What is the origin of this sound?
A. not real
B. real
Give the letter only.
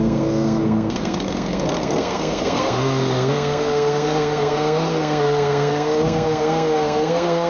A